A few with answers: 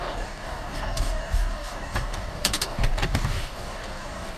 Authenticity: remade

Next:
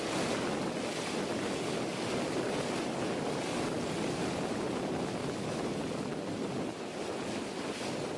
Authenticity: recorded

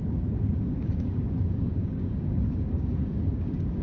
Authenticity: remade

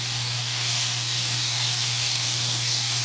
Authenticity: remade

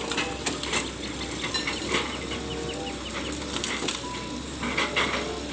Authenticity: recorded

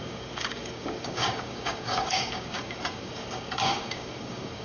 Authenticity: remade